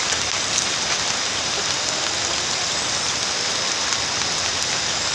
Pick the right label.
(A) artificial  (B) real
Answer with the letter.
B